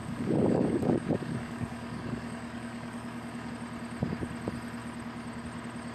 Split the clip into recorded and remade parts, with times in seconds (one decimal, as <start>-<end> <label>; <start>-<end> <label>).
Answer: 0.0-3.5 remade; 3.5-5.9 recorded